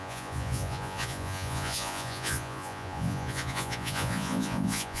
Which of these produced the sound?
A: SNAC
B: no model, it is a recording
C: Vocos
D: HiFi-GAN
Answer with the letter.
C